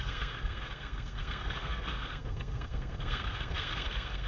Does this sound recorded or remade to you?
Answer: remade